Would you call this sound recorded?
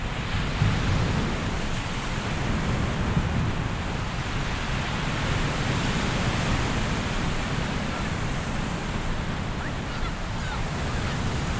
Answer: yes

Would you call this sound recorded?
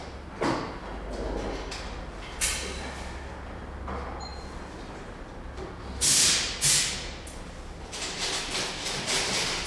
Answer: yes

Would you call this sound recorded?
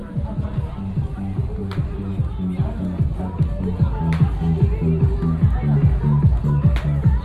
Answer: yes